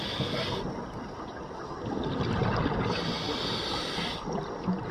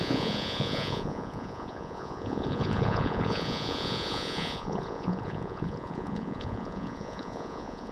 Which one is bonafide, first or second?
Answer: first